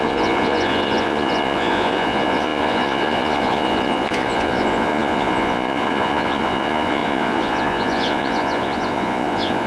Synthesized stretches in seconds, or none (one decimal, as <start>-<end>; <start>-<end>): 0.0-9.7